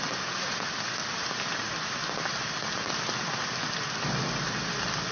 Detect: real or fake real